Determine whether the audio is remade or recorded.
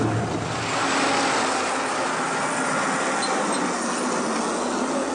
recorded